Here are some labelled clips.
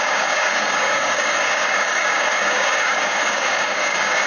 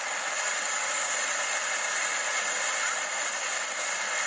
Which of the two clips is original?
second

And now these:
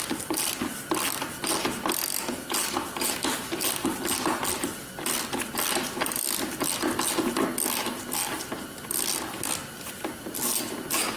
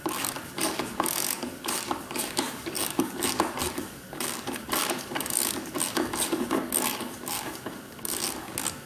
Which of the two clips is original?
first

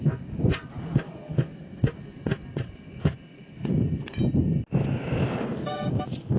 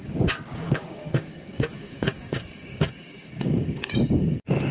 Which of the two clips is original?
first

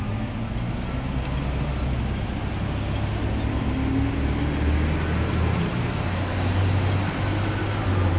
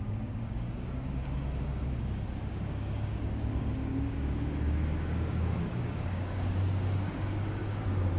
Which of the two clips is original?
first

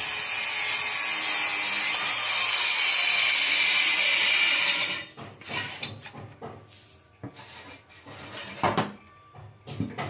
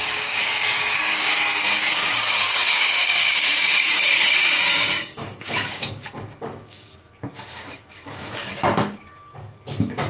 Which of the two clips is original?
first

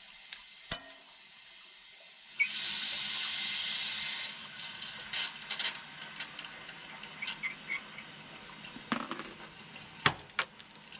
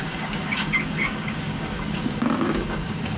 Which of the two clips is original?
first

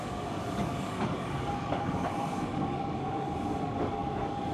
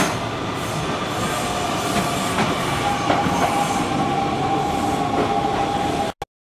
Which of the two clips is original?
second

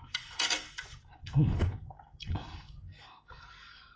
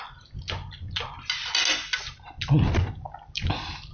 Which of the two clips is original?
second